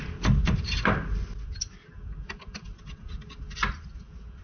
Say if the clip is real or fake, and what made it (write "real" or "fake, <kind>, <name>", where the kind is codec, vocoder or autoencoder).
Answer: real